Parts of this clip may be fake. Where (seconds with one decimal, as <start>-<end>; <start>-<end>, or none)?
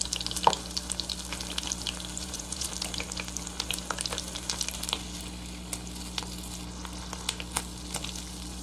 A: 2.2-2.7